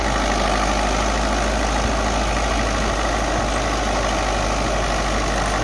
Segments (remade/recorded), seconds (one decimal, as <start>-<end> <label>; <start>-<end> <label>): 0.0-5.6 recorded